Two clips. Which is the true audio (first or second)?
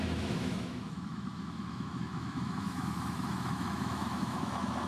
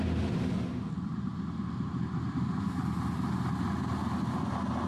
second